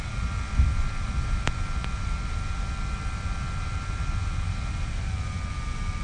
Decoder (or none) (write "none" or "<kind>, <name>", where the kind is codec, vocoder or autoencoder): none